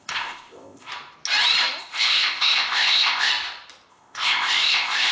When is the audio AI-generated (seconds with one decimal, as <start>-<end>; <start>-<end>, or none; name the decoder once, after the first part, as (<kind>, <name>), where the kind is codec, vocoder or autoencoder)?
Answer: 0.0-0.9 (codec, ZipCodec); 1.8-3.3; 3.9-5.1